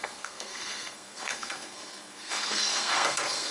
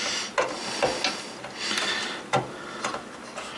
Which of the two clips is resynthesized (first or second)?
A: first